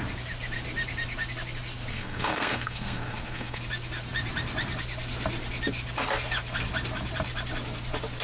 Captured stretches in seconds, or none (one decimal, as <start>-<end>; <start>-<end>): 0.0-1.9; 3.6-8.2